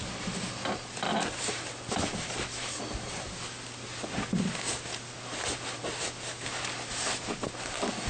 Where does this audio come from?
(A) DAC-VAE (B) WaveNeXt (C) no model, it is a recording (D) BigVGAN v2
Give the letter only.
C